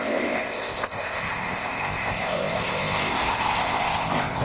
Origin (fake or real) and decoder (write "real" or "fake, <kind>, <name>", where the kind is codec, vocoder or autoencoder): fake, codec, ZipCodec